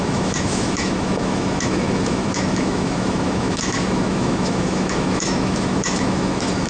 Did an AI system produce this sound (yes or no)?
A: yes